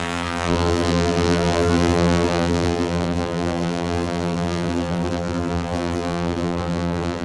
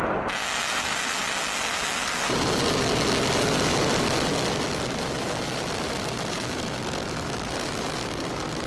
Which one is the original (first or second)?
second